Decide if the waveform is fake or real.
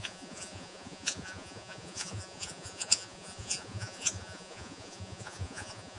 fake